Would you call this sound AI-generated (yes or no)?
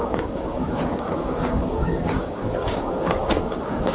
yes